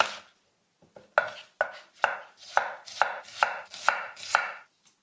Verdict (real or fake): real